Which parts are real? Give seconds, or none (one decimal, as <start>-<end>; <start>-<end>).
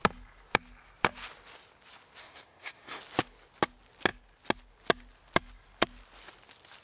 0.0-2.2; 3.0-6.8